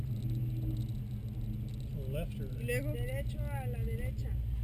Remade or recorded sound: recorded